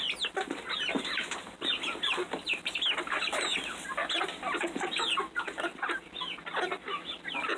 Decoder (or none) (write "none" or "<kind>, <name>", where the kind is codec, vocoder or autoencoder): none